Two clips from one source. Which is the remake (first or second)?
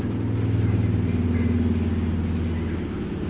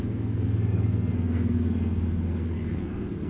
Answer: second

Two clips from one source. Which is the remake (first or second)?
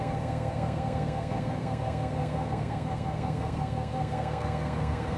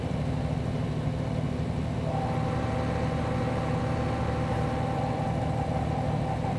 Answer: first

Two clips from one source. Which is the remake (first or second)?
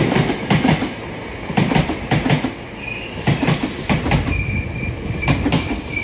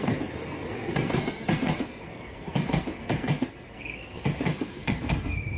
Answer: second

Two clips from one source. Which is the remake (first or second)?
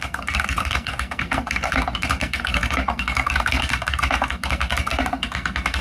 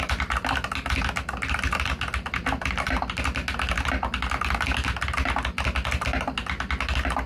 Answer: first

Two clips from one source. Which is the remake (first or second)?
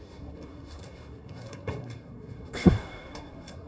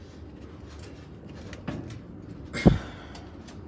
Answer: first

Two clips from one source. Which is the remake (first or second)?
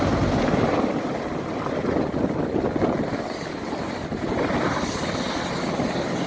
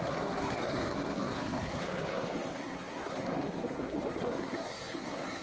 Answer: second